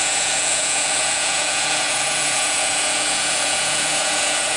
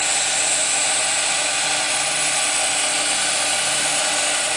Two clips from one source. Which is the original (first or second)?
second